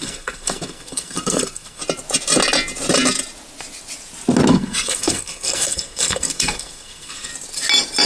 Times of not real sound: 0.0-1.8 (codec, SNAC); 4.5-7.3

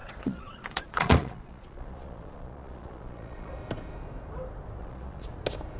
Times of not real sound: 0.0-3.5 (vocoder, Vocos); 4.8-5.3

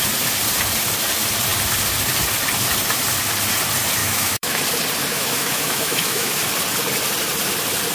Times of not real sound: 4.0-4.6 (autoencoder, DAC-VAE); 5.1-6.3

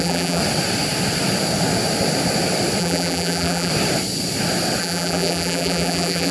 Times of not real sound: 0.0-0.4 (vocoder, BigVGAN v2); 2.8-3.7; 4.8-6.3

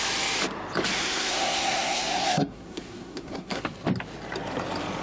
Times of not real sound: 0.9-3.6 (codec, SNAC)